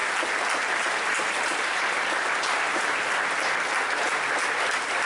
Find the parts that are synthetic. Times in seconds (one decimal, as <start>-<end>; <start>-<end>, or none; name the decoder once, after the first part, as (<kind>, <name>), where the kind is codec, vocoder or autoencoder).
0.0-3.1 (vocoder, BigVGAN v2)